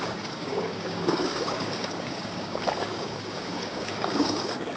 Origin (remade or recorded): remade